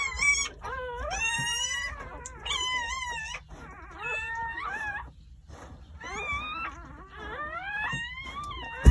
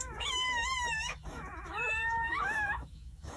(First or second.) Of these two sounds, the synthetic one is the second